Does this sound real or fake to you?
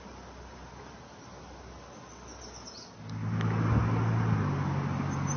real